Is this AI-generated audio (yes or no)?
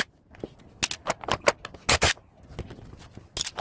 no